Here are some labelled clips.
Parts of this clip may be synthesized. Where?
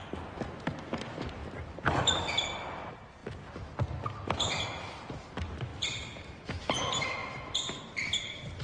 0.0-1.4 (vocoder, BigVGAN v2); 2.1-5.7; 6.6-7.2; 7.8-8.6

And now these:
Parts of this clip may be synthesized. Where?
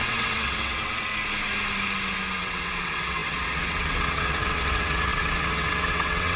0.0-1.1 (vocoder, WaveNeXt); 2.4-6.4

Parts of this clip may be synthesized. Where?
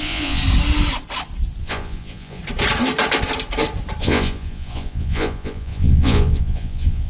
0.0-0.4 (vocoder, Vocos); 1.6-2.4; 4.0-7.1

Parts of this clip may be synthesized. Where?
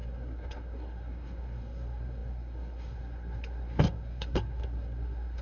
0.0-5.4 (codec, SNAC)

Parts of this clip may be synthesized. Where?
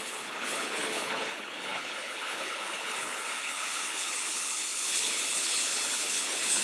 0.0-6.6 (codec, HILCodec)